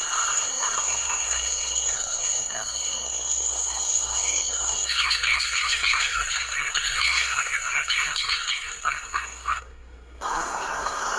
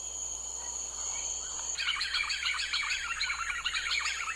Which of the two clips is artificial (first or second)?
first